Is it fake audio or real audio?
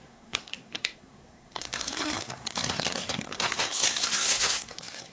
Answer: fake